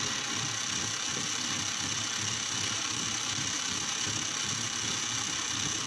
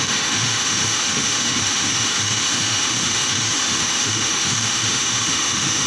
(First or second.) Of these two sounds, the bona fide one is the first